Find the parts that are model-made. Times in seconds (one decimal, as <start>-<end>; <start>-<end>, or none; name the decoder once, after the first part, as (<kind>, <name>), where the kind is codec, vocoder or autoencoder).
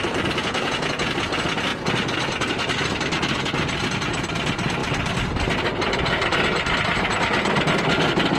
0.4-1.1 (vocoder, Vocos)